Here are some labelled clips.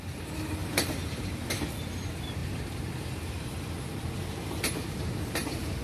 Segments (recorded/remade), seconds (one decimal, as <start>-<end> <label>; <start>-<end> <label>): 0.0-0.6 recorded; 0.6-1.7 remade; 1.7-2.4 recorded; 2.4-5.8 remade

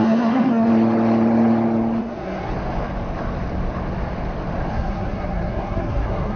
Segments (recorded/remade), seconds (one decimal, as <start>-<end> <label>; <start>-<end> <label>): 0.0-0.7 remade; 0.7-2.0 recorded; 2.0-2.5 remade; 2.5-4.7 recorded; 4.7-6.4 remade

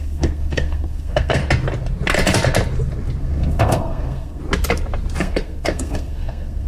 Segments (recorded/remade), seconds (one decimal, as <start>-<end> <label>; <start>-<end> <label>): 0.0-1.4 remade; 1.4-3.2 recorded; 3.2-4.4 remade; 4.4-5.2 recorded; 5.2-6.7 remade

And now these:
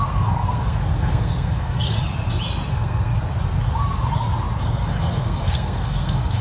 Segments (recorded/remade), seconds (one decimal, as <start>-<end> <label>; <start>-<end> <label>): 0.0-2.0 remade; 2.0-2.7 recorded; 2.7-3.1 remade; 3.1-4.6 recorded; 4.6-6.4 remade

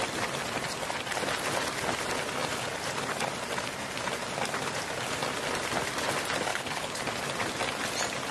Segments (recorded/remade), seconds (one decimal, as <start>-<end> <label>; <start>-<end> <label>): 0.0-6.5 recorded; 6.5-7.0 remade; 7.0-8.3 recorded

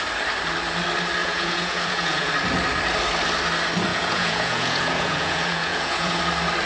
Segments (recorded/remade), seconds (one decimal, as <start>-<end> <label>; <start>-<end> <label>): 0.0-1.2 recorded; 1.2-2.3 remade; 2.3-3.9 recorded; 3.9-6.2 remade; 6.2-6.7 recorded

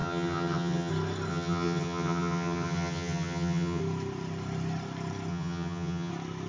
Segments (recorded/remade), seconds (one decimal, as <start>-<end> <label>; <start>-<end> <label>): 0.0-0.9 remade; 0.9-1.3 recorded; 1.3-3.8 remade; 3.8-5.3 recorded; 5.3-6.1 remade; 6.1-6.5 recorded

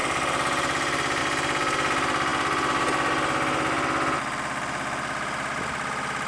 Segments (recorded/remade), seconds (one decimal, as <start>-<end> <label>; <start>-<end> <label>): 0.0-6.3 recorded